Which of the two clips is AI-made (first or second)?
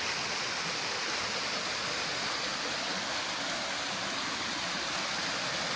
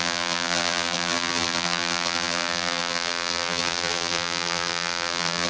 second